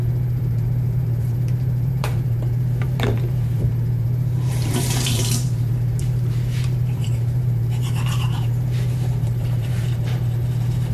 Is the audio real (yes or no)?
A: no